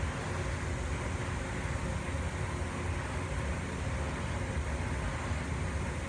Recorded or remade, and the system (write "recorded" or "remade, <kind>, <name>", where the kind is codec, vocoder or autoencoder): recorded